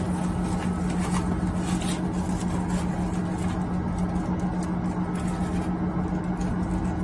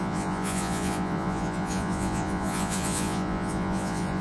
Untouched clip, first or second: first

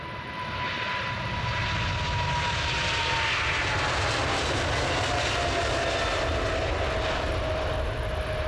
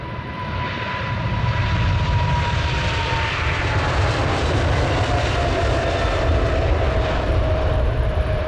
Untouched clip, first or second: first